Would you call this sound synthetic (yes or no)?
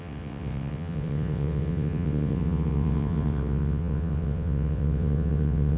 yes